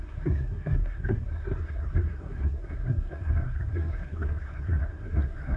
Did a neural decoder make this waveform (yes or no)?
yes